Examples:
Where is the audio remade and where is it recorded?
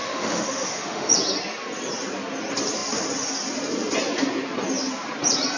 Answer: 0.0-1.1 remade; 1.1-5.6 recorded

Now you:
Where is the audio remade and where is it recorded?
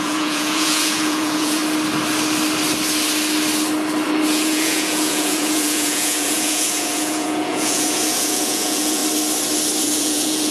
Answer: 0.0-1.6 remade; 1.6-4.3 recorded; 4.3-9.0 remade; 9.0-9.8 recorded; 9.8-10.5 remade